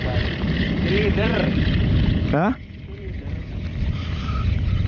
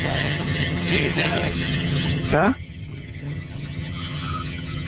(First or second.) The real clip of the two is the first